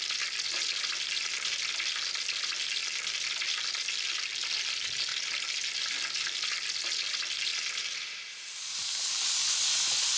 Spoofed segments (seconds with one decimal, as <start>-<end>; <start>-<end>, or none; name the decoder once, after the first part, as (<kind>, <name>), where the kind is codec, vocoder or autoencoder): none